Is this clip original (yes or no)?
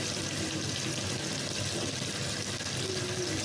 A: yes